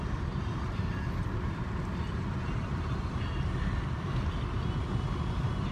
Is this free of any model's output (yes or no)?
yes